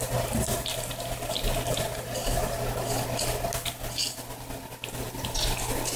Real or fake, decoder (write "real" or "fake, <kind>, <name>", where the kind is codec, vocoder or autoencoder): real